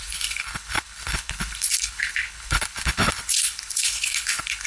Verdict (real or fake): fake